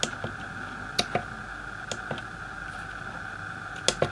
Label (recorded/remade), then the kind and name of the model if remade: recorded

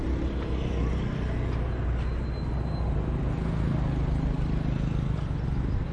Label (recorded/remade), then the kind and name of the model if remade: recorded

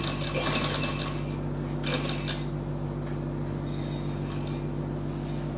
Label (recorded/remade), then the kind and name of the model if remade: recorded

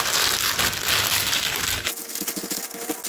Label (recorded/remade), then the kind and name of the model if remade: recorded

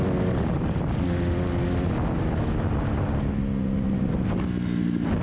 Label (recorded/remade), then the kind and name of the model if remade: recorded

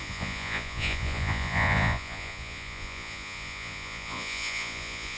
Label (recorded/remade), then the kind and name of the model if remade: remade, vocoder, Vocos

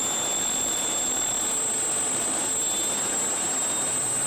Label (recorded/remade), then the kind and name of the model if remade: recorded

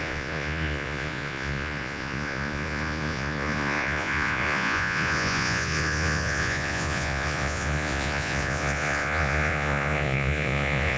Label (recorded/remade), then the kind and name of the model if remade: remade, vocoder, Vocos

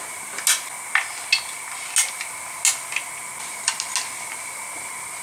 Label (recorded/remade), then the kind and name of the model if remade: recorded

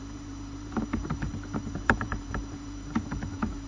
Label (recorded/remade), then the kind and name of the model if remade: remade, vocoder, BigVGAN v2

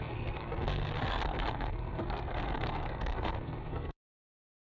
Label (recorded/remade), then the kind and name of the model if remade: remade, codec, SNAC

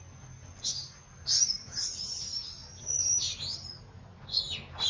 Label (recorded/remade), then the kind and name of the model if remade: recorded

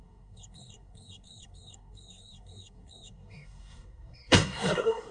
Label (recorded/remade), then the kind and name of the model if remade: remade, codec, SNAC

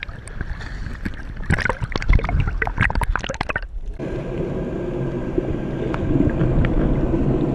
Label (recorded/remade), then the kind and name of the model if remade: recorded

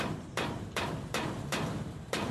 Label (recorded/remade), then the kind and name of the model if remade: remade, vocoder, BigVGAN v2